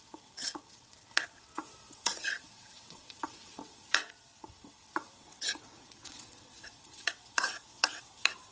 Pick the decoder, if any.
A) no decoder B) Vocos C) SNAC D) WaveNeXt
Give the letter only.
D